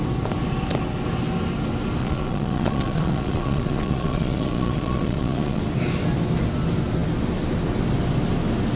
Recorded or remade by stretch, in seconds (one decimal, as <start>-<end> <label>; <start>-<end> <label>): 0.0-2.0 recorded; 2.0-5.6 remade; 5.6-8.8 recorded